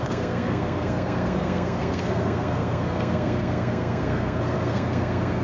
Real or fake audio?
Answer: fake